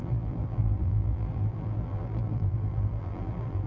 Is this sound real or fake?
fake